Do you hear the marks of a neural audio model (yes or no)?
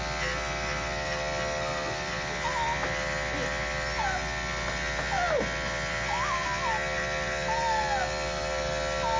no